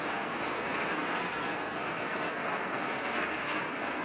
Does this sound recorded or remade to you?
remade